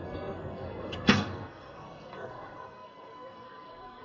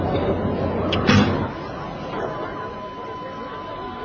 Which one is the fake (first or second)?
first